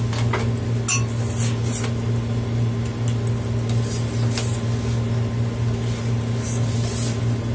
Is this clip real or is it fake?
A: real